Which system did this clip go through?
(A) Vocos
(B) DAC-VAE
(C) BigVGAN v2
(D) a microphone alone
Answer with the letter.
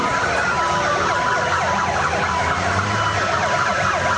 D